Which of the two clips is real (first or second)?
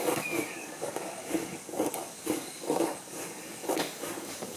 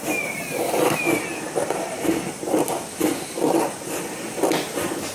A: second